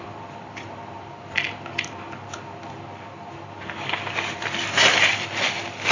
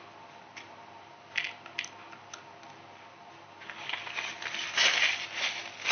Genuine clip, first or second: second